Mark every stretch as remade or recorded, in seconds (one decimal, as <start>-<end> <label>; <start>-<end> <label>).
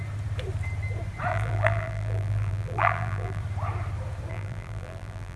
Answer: 0.0-1.3 recorded; 1.3-3.4 remade; 3.4-4.3 recorded; 4.3-5.4 remade